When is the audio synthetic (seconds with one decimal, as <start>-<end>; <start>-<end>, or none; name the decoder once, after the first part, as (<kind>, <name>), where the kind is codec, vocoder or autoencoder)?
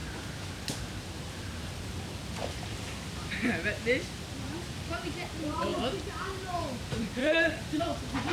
7.2-7.8 (autoencoder, DAC-VAE)